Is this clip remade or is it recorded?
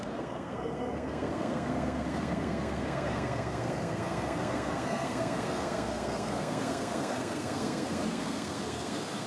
remade